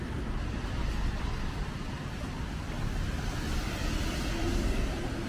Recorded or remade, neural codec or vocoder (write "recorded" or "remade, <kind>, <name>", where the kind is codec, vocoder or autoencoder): recorded